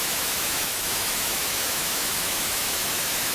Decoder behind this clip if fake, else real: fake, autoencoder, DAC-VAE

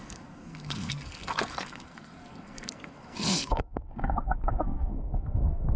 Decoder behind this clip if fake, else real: fake, codec, SNAC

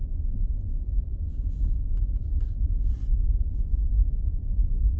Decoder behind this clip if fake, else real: fake, vocoder, Vocos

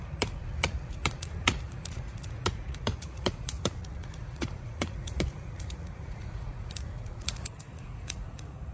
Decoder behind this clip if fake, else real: fake, vocoder, Vocos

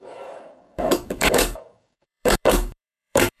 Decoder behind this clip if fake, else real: fake, codec, DAC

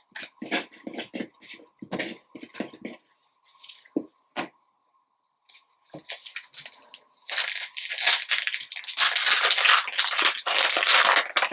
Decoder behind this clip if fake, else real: real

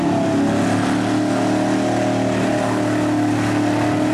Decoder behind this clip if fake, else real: real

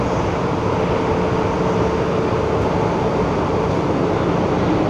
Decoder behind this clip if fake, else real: real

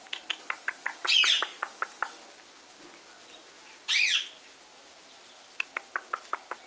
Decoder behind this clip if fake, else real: real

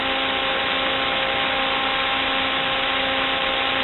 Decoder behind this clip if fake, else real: real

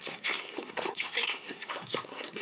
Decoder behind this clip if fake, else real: fake, codec, SNAC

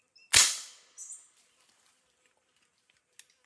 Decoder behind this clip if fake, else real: real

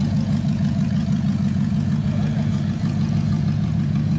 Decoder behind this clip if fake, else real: fake, vocoder, Vocos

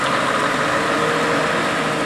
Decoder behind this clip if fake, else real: real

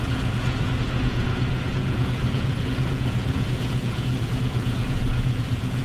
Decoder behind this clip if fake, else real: fake, vocoder, Vocos